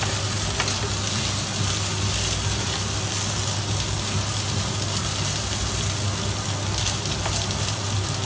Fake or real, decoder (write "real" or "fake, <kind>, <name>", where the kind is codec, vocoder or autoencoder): real